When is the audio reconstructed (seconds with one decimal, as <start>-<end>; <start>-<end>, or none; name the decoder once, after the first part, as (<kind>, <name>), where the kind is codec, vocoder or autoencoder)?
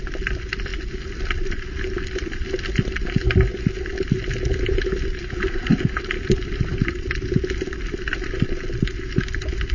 none